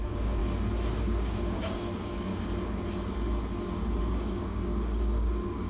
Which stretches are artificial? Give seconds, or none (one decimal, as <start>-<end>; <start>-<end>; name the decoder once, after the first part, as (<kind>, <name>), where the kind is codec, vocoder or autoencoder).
0.0-0.4 (codec, DAC); 1.0-2.3; 4.0-5.7